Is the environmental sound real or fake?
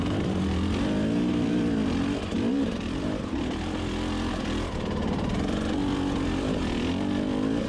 fake